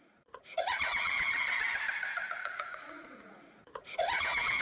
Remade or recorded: remade